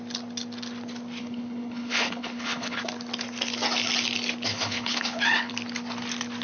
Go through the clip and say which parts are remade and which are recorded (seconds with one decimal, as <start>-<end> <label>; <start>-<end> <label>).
0.0-1.2 recorded; 1.2-2.8 remade; 2.8-4.5 recorded; 4.5-5.5 remade; 5.5-6.4 recorded